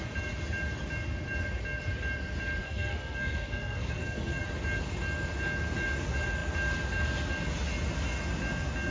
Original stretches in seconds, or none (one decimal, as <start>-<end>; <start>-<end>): 0.0-2.6; 4.4-8.9

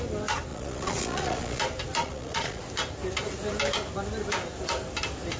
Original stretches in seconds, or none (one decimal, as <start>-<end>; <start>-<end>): 0.0-0.5; 1.6-2.0; 2.6-5.4